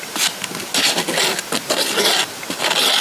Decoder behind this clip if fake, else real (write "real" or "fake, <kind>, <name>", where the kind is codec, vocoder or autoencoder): real